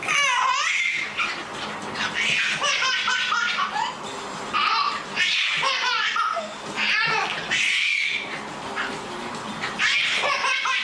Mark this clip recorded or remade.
recorded